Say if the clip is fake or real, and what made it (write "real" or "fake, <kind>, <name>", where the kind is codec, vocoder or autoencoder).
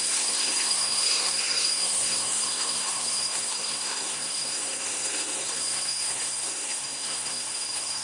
fake, codec, SNAC